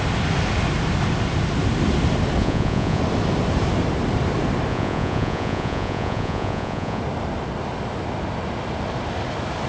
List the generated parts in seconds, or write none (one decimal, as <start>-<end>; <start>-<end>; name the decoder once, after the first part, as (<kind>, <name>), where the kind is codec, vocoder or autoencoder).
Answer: 2.4-3.0 (vocoder, Vocos); 4.7-7.0

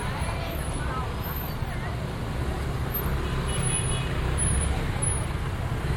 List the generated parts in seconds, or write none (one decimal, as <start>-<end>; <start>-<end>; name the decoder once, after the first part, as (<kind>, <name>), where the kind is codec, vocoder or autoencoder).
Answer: none

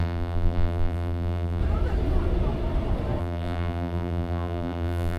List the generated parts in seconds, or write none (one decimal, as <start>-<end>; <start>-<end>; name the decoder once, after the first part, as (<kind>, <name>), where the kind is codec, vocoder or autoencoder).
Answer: 0.0-1.6 (vocoder, BigVGAN v2); 3.2-5.2

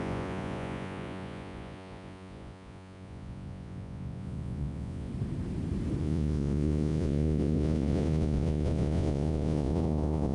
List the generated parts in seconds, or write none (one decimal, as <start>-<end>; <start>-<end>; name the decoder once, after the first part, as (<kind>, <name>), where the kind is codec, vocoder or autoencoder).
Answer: 0.0-5.1 (vocoder, Vocos); 6.0-10.3

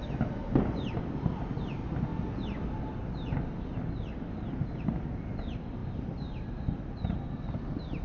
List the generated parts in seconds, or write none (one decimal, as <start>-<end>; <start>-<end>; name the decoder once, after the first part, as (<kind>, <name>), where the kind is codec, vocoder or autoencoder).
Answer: none